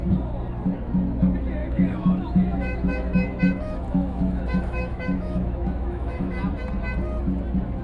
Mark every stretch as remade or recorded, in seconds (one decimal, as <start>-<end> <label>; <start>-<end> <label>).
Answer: 0.0-1.6 recorded; 1.6-6.3 remade; 6.3-7.8 recorded